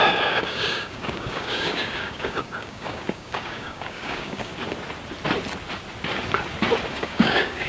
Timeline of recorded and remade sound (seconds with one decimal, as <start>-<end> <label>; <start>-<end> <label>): 0.0-4.5 remade; 4.5-6.9 recorded; 6.9-7.7 remade